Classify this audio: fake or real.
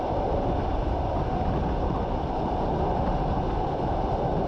real